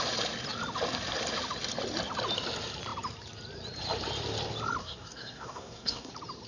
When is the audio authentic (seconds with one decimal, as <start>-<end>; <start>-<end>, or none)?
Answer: 0.0-4.8; 6.1-6.5

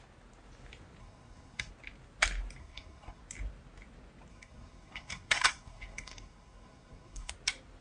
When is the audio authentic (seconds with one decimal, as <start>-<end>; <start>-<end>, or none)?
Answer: 0.0-1.0; 1.7-2.6; 3.2-4.3; 7.3-7.8

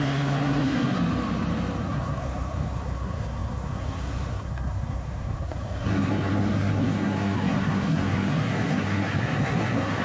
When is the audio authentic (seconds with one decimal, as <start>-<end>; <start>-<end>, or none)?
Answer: 1.0-1.8

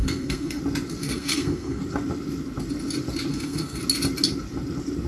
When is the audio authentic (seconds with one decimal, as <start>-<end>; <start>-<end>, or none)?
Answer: 0.6-1.0; 1.8-3.3; 3.8-5.1

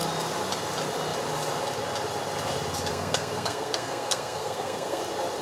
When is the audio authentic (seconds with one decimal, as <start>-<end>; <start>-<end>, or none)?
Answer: 0.0-2.9; 5.0-5.4